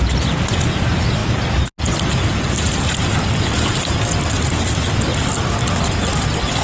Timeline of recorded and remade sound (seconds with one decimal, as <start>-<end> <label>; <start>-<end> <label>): 0.0-6.6 recorded